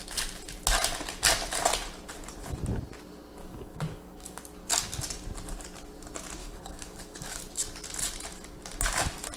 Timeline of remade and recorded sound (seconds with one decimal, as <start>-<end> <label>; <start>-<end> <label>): 0.0-3.4 recorded; 3.4-4.4 remade; 4.4-6.4 recorded; 6.4-7.4 remade; 7.4-9.4 recorded